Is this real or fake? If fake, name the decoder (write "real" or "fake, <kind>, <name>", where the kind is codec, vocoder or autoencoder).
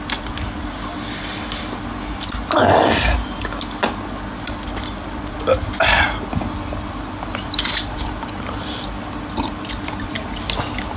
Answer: real